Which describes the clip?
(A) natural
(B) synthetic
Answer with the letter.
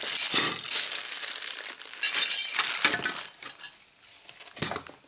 A